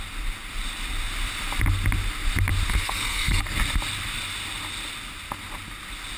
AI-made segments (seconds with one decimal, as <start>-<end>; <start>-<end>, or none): 2.7-3.4